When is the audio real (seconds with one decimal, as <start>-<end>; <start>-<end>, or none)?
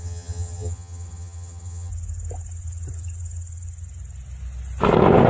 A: 1.9-5.3